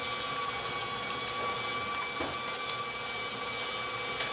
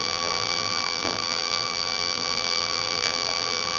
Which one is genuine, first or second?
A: first